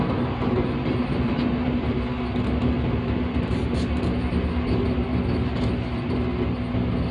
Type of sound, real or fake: real